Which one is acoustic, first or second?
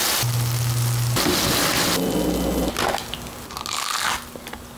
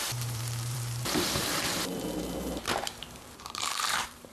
first